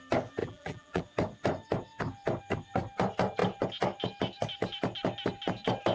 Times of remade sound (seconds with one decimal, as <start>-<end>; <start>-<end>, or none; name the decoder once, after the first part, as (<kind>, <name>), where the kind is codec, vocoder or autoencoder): 0.4-1.0 (vocoder, BigVGAN v2)